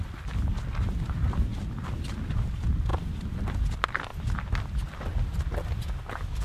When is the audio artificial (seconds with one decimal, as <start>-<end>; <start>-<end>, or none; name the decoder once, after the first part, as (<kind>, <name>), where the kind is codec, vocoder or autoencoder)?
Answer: 0.0-4.1 (vocoder, BigVGAN v2); 5.8-6.4